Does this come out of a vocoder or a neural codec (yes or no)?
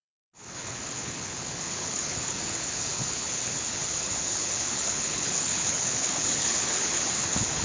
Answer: yes